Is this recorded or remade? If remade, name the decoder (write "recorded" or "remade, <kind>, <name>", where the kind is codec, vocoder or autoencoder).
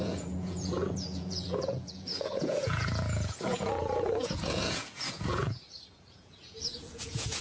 remade, vocoder, Vocos